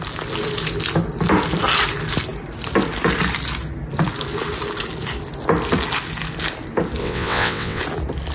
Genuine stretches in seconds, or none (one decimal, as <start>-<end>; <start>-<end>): 0.0-7.0; 7.8-8.3